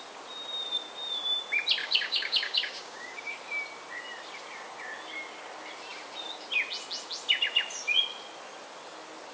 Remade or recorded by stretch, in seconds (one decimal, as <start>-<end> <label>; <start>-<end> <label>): 0.0-1.8 recorded; 1.8-3.3 remade; 3.3-9.3 recorded